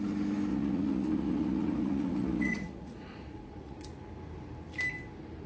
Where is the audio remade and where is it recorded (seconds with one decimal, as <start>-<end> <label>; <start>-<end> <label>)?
0.0-0.5 recorded; 0.5-3.8 remade; 3.8-5.5 recorded